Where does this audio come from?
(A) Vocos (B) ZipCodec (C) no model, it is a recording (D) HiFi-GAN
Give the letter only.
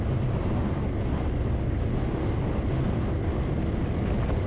C